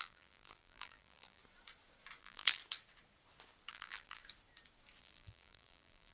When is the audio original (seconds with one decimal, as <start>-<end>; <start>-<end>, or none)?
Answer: 1.4-2.2; 2.6-3.7; 4.2-5.0